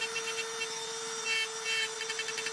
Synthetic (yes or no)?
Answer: no